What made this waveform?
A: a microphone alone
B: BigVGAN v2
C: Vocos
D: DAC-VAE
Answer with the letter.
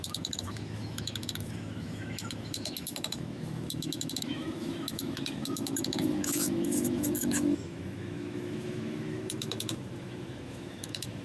D